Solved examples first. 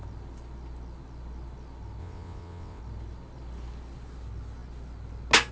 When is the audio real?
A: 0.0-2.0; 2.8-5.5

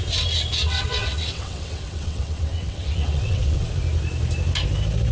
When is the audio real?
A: 0.0-0.6; 3.7-5.1

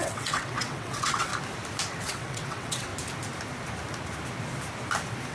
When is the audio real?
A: 1.3-1.9; 2.9-5.3

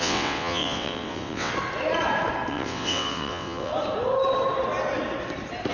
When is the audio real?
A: 1.5-2.5; 3.7-5.7

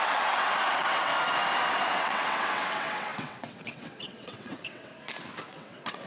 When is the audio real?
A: 1.1-1.9; 4.9-5.5